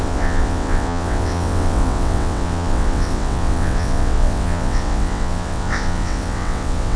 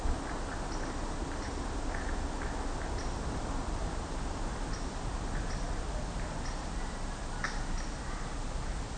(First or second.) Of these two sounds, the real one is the second